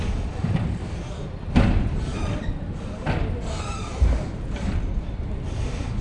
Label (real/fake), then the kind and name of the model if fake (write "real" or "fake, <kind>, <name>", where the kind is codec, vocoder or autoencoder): fake, vocoder, BigVGAN v2